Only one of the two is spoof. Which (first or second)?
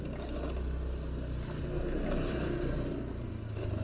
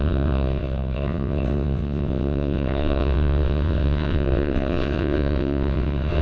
second